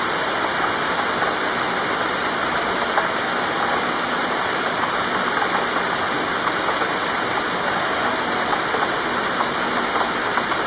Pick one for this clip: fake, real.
real